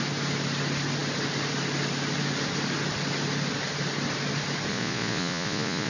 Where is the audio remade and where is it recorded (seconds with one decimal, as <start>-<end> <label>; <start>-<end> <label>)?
0.0-4.7 recorded; 4.7-5.9 remade